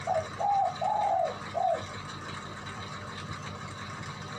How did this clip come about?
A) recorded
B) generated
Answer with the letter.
A